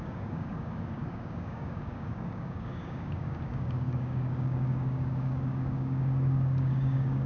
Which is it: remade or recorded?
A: remade